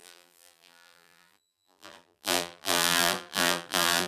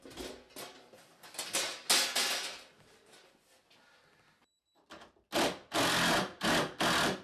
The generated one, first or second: first